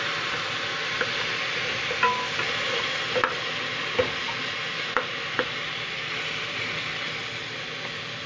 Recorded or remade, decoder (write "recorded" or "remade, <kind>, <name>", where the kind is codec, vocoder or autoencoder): recorded